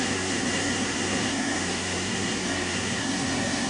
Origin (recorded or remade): remade